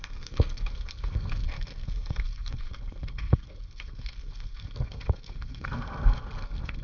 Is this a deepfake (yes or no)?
yes